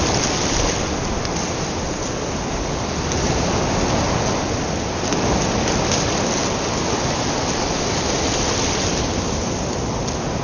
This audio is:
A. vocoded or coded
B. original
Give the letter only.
B